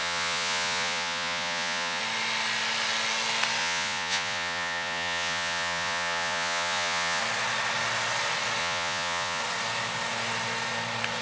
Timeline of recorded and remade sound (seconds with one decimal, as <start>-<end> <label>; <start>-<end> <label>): 0.0-2.0 remade; 2.0-3.6 recorded; 3.6-7.2 remade; 7.2-8.6 recorded; 8.6-9.4 remade; 9.4-11.2 recorded